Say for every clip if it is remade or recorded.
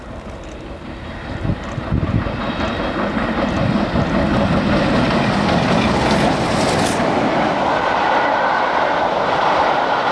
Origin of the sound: recorded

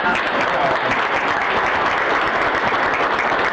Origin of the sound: recorded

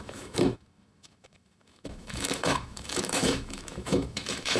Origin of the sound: remade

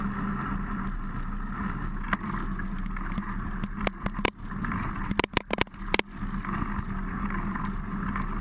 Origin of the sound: recorded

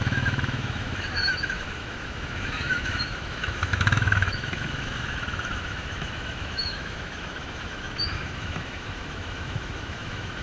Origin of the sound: remade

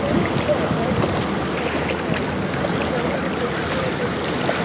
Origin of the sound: recorded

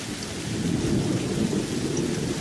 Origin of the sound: recorded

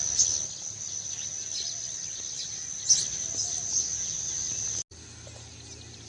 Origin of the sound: recorded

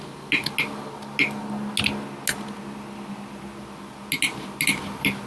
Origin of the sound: recorded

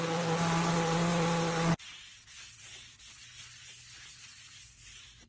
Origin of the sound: recorded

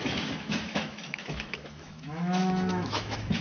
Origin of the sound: remade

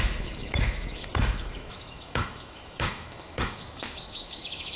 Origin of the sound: remade